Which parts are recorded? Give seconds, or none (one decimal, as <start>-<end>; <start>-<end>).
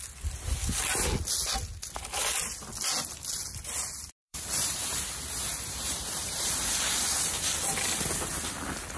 0.0-4.2; 4.8-5.5; 7.5-9.0